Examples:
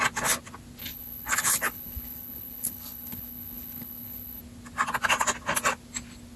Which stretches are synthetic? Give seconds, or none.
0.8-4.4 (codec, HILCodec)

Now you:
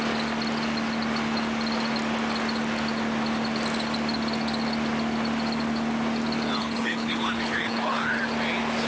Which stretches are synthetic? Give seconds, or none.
6.6-8.2 (codec, HILCodec)

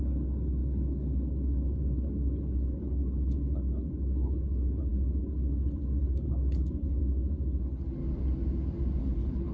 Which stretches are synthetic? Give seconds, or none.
0.0-7.0 (codec, HILCodec); 7.6-8.0; 9.0-9.5

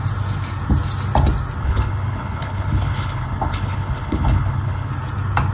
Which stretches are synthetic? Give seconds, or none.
1.6-4.9 (codec, HILCodec)